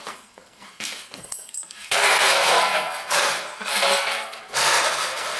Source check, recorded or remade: remade